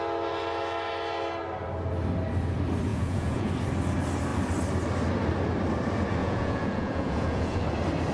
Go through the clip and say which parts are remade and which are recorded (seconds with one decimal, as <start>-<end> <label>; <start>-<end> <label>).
0.0-2.9 recorded; 2.9-3.5 remade; 3.5-6.2 recorded; 6.2-7.6 remade; 7.6-8.1 recorded